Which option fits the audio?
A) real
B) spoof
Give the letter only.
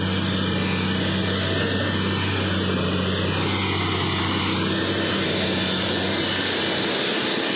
A